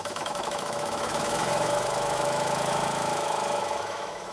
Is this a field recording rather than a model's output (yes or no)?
no